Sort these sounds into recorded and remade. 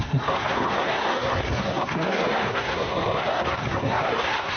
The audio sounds remade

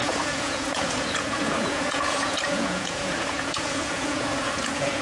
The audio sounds remade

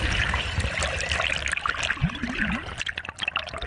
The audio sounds recorded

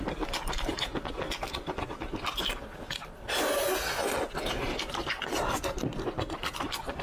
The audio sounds recorded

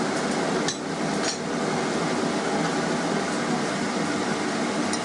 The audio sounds recorded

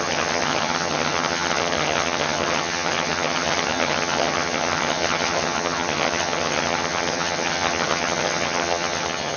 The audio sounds remade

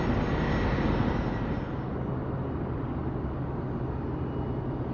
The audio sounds recorded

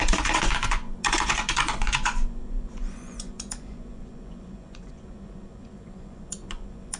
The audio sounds remade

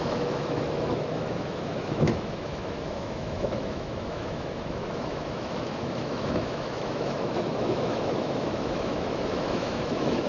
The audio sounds remade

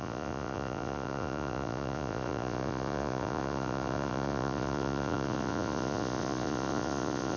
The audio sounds remade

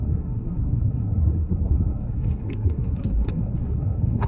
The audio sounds remade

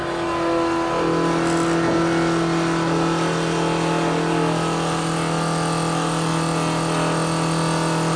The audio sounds recorded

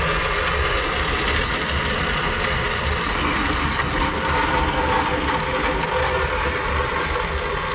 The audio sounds recorded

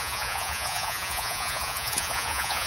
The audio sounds remade